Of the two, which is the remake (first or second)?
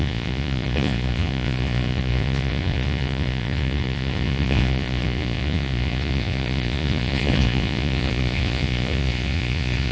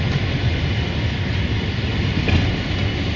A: first